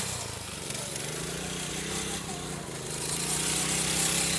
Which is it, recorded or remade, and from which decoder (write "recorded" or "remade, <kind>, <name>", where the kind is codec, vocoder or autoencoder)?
recorded